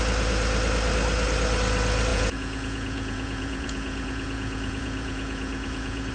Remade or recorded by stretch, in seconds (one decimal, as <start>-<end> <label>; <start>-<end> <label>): 0.0-2.1 recorded; 2.1-6.1 remade